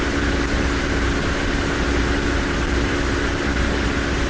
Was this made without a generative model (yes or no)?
yes